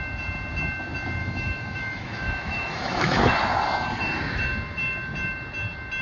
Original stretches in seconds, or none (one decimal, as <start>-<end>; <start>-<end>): 0.0-1.2; 3.3-6.0